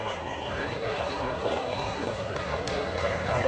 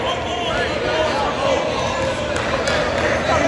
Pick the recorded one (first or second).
second